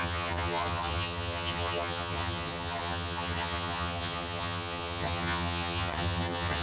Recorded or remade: remade